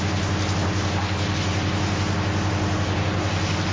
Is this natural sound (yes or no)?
yes